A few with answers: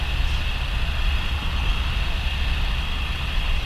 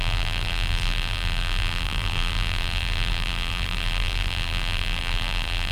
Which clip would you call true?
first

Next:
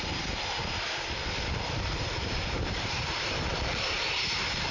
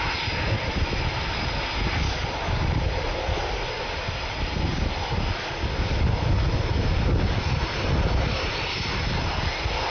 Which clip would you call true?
second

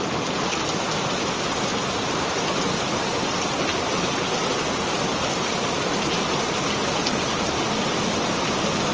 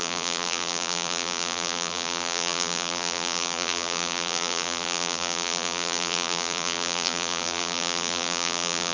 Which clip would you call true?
first